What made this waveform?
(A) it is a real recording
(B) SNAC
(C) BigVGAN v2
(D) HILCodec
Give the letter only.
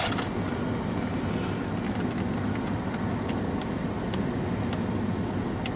A